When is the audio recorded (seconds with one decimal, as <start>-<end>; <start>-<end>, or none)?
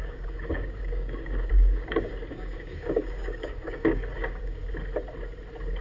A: 4.6-5.8